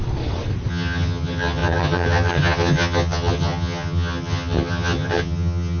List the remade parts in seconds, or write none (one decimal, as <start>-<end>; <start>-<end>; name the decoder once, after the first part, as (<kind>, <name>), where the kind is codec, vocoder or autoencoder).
0.7-5.8 (vocoder, HiFi-GAN)